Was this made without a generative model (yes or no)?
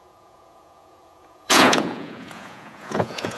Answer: no